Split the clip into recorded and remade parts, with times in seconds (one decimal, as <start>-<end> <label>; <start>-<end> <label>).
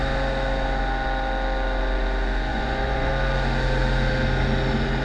0.0-2.5 recorded; 2.5-3.1 remade; 3.1-5.0 recorded